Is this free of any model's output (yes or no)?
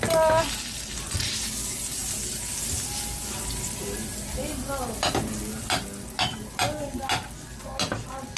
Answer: yes